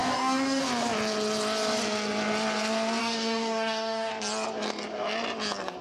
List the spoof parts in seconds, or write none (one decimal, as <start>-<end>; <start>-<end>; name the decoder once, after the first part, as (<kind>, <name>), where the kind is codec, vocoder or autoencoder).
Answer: 0.0-0.6 (codec, DAC); 3.0-4.1